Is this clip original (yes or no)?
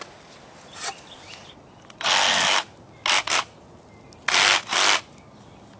yes